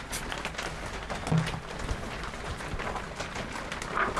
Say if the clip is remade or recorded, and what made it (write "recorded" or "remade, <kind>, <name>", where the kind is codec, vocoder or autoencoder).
recorded